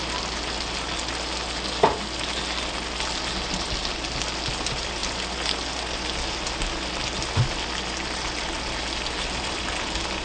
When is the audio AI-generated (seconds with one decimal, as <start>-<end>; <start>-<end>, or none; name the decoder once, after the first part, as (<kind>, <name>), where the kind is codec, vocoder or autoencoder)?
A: none